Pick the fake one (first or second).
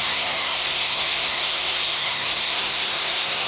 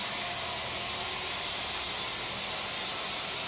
first